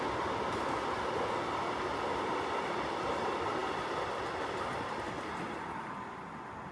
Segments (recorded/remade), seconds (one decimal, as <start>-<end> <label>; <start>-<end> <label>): 0.0-6.7 recorded